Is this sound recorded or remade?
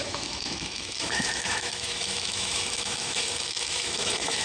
remade